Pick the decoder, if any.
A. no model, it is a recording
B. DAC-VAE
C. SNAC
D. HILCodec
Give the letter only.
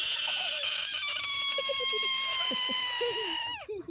B